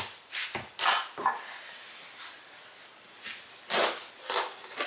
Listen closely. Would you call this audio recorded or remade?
recorded